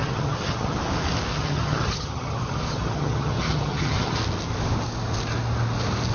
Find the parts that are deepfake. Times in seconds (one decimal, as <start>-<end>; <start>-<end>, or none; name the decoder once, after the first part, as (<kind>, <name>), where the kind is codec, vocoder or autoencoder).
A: 0.0-0.8 (vocoder, HiFi-GAN); 1.3-4.2